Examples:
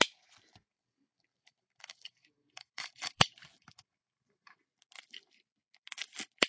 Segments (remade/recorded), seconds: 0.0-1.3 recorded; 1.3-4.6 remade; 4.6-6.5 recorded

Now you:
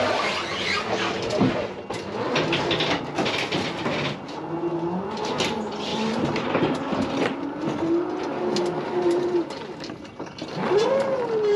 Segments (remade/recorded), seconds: 0.0-5.9 recorded; 5.9-6.6 remade; 6.6-11.6 recorded

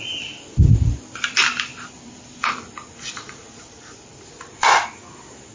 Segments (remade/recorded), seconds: 0.0-1.4 recorded; 1.4-4.7 remade; 4.7-5.5 recorded

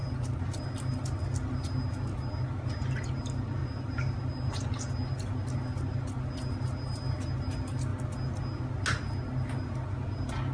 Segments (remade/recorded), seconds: 0.0-0.6 remade; 0.6-3.6 recorded; 3.6-4.7 remade; 4.7-10.5 recorded

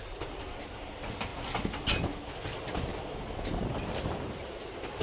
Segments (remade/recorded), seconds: 0.0-5.0 recorded